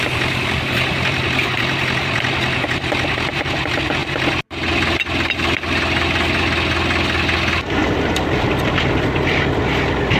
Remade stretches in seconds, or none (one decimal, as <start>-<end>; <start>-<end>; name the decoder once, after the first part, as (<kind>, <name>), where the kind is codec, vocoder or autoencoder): 7.8-9.6 (vocoder, BigVGAN v2)